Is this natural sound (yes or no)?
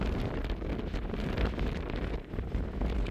yes